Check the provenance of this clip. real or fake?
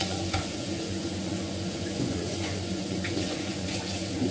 fake